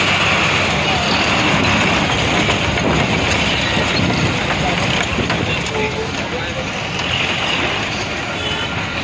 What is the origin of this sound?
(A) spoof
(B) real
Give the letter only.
B